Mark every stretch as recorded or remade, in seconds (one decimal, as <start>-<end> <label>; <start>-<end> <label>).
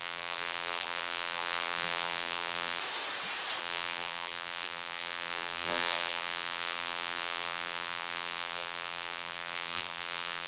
0.0-2.8 remade; 2.8-3.6 recorded; 3.6-10.5 remade